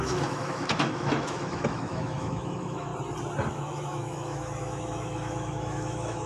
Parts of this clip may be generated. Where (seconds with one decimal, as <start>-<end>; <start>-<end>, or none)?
0.0-2.9; 3.5-6.3